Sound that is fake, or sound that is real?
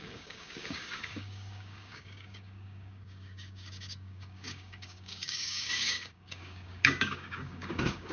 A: fake